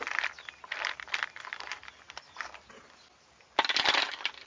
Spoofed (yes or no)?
no